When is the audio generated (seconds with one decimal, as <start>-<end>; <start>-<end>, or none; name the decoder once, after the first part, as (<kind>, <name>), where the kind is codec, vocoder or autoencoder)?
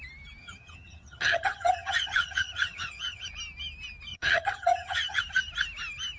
0.4-3.3 (vocoder, HiFi-GAN); 4.1-5.2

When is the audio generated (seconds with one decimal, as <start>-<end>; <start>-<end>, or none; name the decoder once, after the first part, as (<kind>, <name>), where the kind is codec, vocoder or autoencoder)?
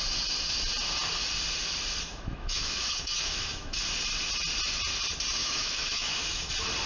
2.1-3.8 (autoencoder, DAC-VAE); 5.4-6.5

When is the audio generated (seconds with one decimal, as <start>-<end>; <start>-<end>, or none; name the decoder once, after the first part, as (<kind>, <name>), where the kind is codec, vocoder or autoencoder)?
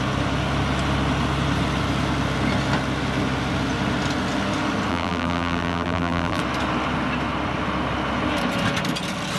4.9-6.4 (vocoder, BigVGAN v2)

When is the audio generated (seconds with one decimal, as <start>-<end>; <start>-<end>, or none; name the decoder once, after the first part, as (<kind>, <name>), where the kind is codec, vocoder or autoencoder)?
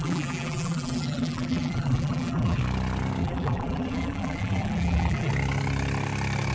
0.0-2.6 (vocoder, BigVGAN v2); 3.2-5.3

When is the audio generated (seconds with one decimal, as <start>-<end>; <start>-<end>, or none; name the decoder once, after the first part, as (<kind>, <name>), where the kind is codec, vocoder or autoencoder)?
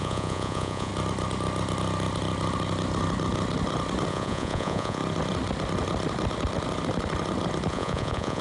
0.0-0.9 (vocoder, Vocos); 4.1-5.0; 7.7-8.4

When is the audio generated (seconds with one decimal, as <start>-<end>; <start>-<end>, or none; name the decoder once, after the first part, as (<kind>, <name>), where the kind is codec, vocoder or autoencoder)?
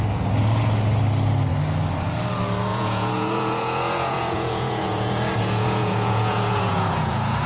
2.7-7.5 (vocoder, Vocos)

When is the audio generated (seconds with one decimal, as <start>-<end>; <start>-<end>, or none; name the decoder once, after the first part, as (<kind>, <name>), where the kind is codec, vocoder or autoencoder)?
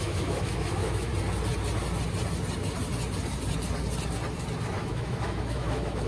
0.0-1.1 (autoencoder, DAC-VAE); 4.8-6.1